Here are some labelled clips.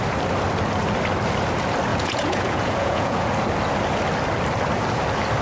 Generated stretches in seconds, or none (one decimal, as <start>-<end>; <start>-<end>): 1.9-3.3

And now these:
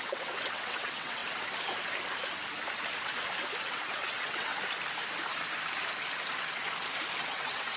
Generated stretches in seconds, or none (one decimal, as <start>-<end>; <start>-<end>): 0.0-1.2; 3.7-4.5; 7.2-7.8

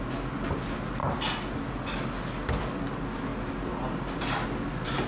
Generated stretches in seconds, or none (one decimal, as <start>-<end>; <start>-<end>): none

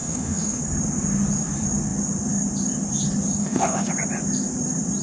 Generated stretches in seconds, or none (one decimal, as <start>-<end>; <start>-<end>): 0.0-0.6; 3.4-3.9

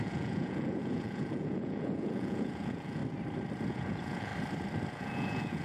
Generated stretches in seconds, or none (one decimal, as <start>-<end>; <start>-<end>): 0.0-3.0; 3.7-4.3; 4.9-5.6

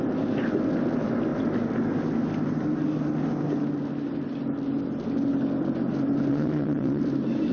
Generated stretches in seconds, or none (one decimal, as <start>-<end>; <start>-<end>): 6.3-7.0